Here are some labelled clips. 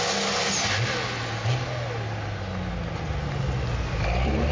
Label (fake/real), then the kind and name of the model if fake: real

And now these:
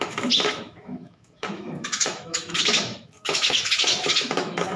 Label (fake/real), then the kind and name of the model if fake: fake, autoencoder, DAC-VAE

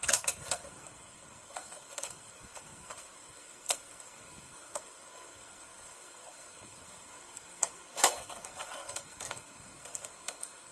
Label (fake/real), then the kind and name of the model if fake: fake, codec, SNAC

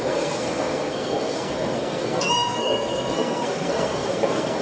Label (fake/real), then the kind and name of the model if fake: fake, codec, SNAC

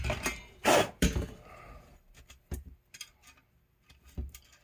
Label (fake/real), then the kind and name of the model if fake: fake, vocoder, BigVGAN v2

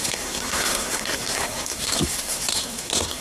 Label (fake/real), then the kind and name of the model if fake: fake, codec, SNAC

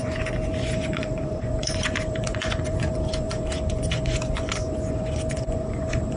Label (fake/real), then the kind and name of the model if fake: fake, vocoder, Vocos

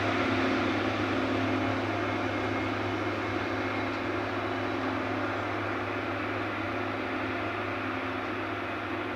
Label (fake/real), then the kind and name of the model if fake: real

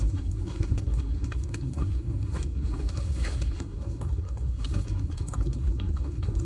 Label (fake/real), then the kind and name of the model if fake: fake, codec, SNAC